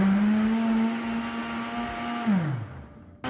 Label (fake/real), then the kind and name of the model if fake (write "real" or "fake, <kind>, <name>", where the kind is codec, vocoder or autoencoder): real